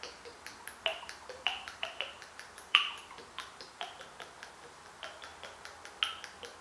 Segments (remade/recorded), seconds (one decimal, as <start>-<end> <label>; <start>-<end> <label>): 0.0-0.9 recorded; 0.9-4.0 remade; 4.0-6.6 recorded